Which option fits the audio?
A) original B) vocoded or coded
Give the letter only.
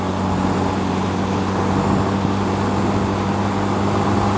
A